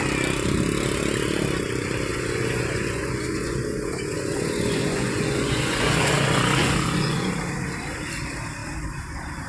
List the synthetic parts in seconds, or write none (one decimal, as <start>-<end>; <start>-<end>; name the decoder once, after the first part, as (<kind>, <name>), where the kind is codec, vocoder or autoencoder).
2.1-7.3 (vocoder, Vocos)